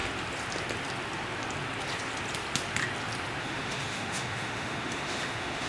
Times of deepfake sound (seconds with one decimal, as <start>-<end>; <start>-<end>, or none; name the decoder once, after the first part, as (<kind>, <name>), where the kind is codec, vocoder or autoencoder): 3.4-5.7 (autoencoder, DAC-VAE)